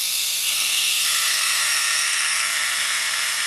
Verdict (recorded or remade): remade